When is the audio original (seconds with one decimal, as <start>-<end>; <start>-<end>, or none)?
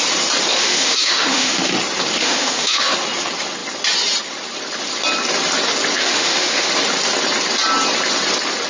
0.0-0.5; 1.7-2.2; 2.9-6.0; 6.7-8.7